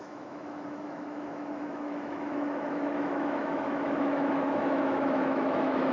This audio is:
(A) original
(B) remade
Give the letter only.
B